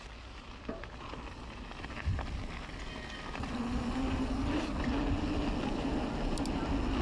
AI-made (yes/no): no